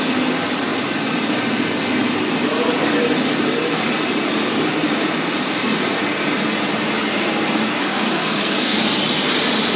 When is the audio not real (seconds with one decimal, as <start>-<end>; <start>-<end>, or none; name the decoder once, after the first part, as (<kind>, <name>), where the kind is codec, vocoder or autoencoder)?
7.8-8.8 (codec, SNAC)